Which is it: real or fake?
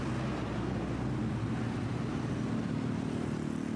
real